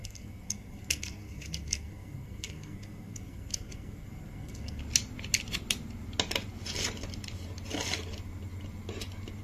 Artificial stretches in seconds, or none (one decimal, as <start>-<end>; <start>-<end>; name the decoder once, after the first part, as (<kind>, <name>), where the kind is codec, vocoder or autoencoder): 0.0-4.8 (codec, SNAC)